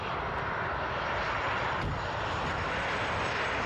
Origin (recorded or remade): recorded